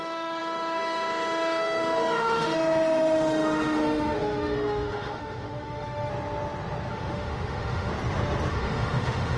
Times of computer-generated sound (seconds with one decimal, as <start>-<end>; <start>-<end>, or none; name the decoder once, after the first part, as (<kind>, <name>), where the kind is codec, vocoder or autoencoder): 0.0-6.1 (autoencoder, DAC-VAE); 6.9-7.9; 8.5-9.4

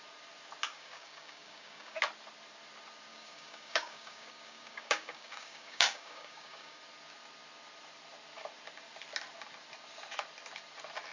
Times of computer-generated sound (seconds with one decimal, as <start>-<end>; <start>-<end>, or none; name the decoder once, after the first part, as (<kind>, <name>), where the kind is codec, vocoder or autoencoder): 0.7-2.0 (codec, DAC); 3.1-6.8

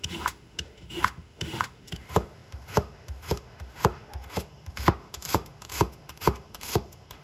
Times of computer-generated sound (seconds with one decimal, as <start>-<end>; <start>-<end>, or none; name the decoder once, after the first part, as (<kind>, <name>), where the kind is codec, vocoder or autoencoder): 0.0-7.2 (autoencoder, DAC-VAE)

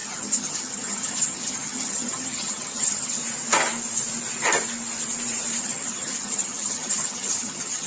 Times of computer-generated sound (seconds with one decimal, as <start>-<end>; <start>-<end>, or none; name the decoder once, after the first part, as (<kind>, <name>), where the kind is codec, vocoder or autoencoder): 0.0-3.2 (vocoder, HiFi-GAN); 5.6-7.9

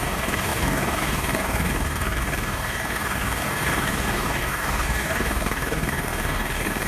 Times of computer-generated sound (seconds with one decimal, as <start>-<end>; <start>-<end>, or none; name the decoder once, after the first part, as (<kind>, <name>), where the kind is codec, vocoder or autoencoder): 0.0-6.9 (codec, DAC)